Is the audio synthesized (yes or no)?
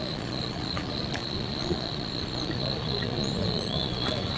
yes